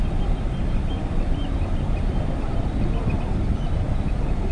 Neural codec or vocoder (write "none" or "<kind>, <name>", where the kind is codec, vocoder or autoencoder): none